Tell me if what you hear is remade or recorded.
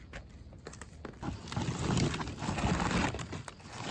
recorded